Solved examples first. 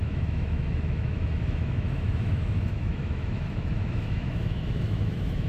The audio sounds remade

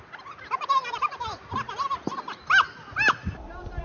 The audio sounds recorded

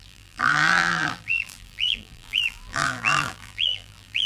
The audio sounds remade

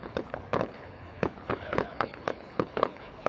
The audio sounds remade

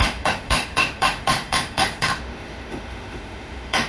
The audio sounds remade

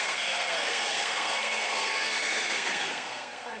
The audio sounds remade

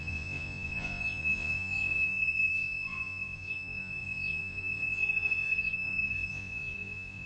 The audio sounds remade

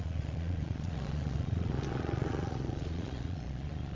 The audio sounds remade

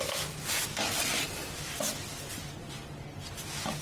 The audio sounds recorded